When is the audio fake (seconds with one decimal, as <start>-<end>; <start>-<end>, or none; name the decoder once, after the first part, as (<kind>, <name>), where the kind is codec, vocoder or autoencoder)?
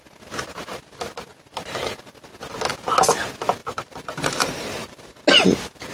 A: 3.6-5.2 (vocoder, BigVGAN v2)